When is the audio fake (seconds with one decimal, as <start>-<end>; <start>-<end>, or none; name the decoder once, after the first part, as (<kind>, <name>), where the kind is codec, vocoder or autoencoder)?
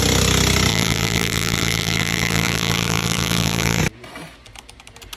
0.7-3.8 (vocoder, BigVGAN v2)